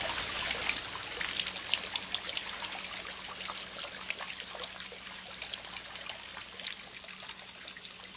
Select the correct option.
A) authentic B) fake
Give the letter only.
A